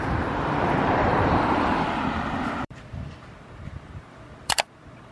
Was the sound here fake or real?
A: fake